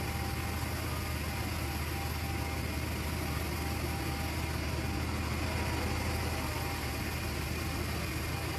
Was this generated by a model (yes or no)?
no